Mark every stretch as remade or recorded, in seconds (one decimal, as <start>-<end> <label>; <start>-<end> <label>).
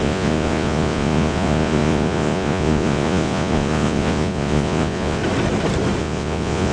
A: 0.0-5.2 remade; 5.2-6.0 recorded; 6.0-6.7 remade